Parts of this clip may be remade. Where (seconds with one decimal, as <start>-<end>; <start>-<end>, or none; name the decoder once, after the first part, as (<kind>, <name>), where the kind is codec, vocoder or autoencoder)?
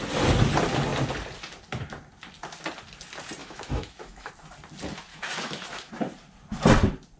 3.4-4.3 (autoencoder, DAC-VAE); 5.1-5.9